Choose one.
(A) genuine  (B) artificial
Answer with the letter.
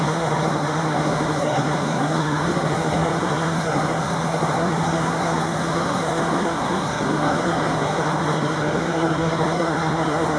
B